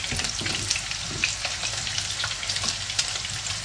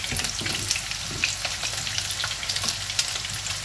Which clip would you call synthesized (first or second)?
first